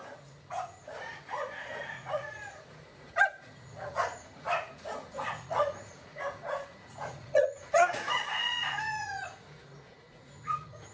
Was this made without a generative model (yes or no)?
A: no